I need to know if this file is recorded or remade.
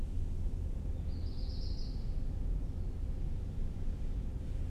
recorded